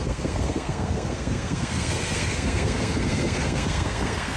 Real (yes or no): no